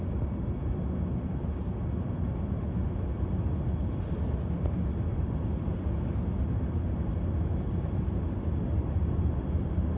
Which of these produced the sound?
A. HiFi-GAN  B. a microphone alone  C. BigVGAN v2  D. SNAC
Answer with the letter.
B